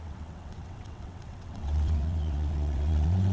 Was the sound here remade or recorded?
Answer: remade